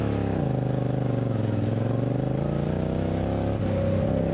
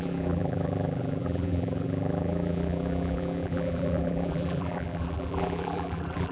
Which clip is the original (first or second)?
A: first